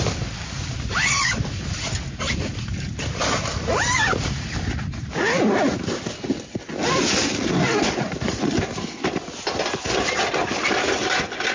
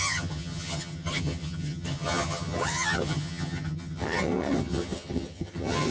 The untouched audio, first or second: first